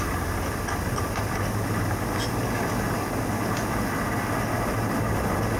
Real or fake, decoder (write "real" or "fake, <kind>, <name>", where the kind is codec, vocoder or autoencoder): real